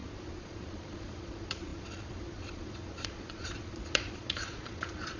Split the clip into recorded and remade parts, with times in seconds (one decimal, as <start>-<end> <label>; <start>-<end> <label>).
0.0-5.2 remade